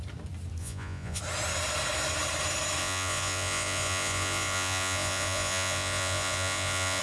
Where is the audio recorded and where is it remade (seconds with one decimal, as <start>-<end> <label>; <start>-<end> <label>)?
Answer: 0.0-0.6 recorded; 0.6-1.2 remade; 1.2-2.8 recorded; 2.8-7.0 remade